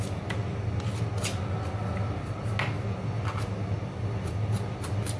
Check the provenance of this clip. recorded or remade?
recorded